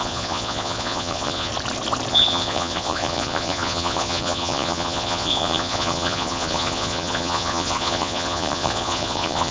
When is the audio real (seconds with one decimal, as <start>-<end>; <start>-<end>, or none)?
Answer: 1.5-2.1

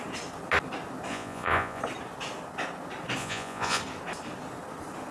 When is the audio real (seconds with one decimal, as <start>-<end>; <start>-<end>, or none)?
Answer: 0.0-1.1; 1.8-3.2; 3.8-5.1

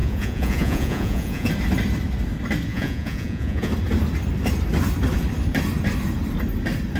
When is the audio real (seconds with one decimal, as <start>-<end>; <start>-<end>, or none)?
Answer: 1.5-2.7; 3.7-7.0